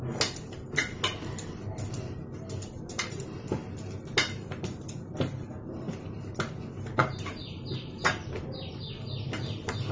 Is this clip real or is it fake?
real